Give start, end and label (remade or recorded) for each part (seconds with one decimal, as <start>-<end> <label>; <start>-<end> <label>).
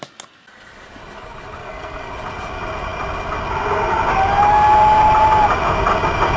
0.0-1.6 recorded; 1.6-2.1 remade; 2.1-6.4 recorded